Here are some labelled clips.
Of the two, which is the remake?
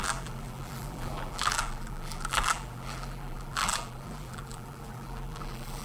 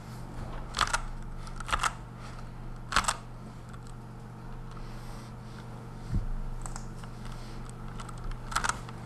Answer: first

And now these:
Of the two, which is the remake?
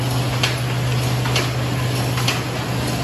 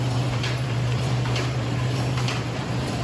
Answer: second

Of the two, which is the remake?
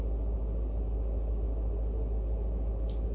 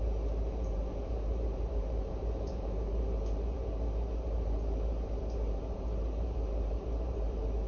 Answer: second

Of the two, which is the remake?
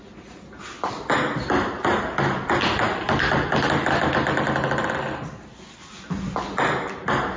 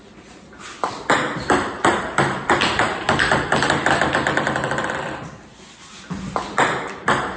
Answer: second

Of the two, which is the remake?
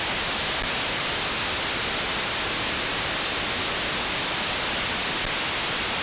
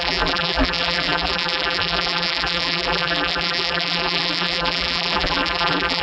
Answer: second